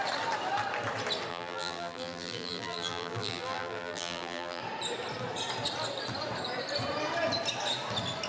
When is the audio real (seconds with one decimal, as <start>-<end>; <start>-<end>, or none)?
0.0-1.3; 4.6-8.3